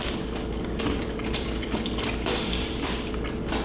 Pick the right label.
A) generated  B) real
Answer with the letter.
B